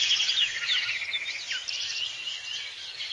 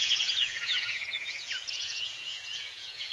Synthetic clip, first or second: second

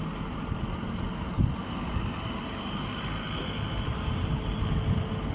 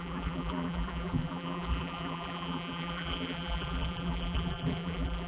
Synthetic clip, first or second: second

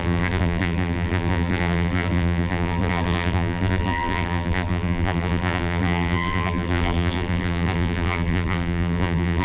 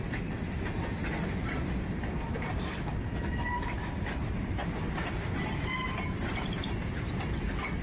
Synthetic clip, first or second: first